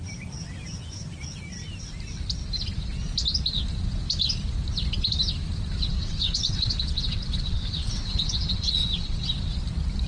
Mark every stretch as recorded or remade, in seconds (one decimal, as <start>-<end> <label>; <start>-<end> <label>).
0.0-5.9 recorded; 5.9-9.3 remade; 9.3-10.1 recorded